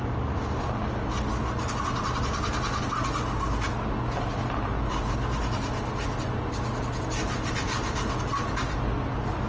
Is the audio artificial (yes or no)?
no